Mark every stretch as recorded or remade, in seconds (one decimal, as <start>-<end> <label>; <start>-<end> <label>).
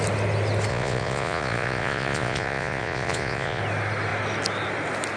0.0-0.7 recorded; 0.7-3.6 remade; 3.6-5.2 recorded